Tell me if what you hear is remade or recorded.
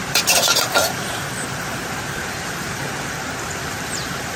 remade